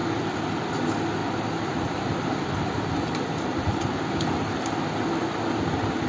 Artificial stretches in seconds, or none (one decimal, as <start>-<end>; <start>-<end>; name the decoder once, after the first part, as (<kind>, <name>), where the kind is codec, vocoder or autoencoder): 1.2-4.0 (vocoder, BigVGAN v2)